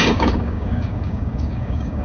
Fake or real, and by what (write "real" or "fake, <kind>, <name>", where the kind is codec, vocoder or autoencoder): fake, codec, DAC